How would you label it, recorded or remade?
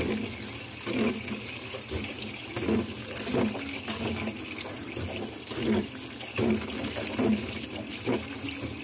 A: recorded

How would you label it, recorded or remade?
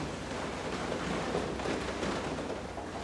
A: recorded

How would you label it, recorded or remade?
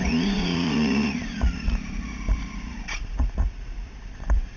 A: remade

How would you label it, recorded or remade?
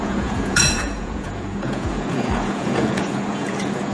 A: remade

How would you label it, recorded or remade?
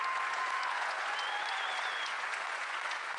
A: remade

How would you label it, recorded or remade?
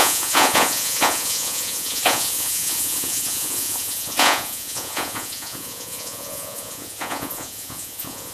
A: remade